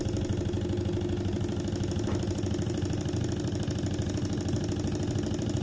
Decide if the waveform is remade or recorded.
recorded